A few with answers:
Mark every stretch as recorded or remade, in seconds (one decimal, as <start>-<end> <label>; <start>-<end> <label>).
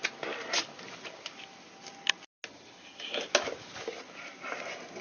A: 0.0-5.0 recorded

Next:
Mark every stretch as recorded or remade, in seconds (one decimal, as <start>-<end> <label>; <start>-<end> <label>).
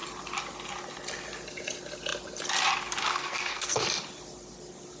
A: 0.0-3.1 recorded; 3.1-3.8 remade; 3.8-5.0 recorded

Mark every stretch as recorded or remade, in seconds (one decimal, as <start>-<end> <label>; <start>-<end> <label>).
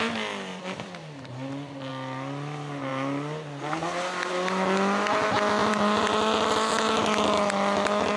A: 0.0-0.5 recorded; 0.5-1.9 remade; 1.9-5.6 recorded; 5.6-6.7 remade; 6.7-8.2 recorded